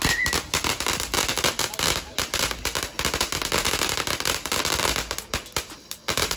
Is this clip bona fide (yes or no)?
yes